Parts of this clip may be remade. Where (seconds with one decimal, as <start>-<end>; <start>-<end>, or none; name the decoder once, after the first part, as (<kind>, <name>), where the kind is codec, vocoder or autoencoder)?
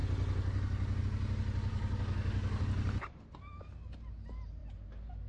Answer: 1.7-2.6 (codec, DAC)